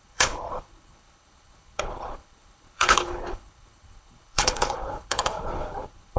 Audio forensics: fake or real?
fake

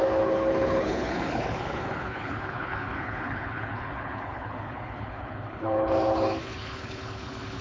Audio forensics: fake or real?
fake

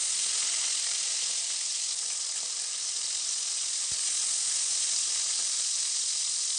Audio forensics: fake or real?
real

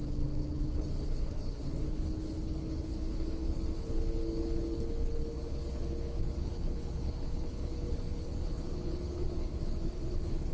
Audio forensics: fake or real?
fake